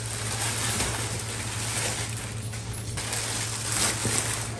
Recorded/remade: recorded